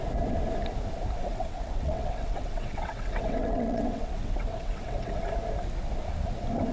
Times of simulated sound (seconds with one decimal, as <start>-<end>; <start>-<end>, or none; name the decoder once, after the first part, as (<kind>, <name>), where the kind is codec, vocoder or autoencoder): 1.2-5.2 (vocoder, WaveNeXt)